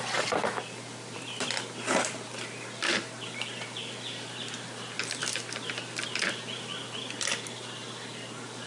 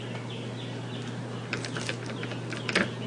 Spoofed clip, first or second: first